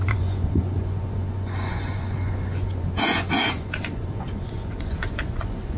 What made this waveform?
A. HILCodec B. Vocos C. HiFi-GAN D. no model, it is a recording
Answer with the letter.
B